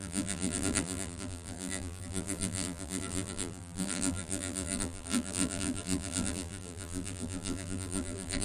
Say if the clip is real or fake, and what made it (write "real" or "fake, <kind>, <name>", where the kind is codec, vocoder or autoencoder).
fake, vocoder, BigVGAN v2